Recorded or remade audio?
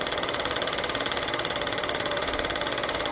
remade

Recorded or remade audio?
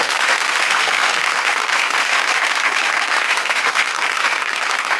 remade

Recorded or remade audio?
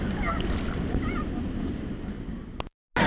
recorded